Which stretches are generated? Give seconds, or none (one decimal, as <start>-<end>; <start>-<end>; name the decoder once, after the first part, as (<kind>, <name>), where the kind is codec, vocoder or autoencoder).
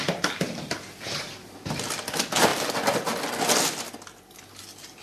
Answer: none